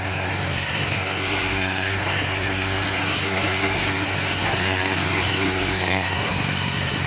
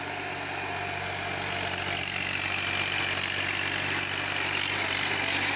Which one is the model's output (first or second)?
first